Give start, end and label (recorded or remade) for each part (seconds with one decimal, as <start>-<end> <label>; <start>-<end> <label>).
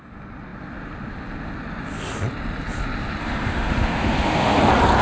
0.0-3.2 recorded; 3.2-4.6 remade; 4.6-5.0 recorded